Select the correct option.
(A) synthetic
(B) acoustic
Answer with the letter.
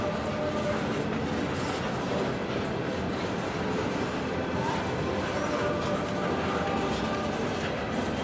B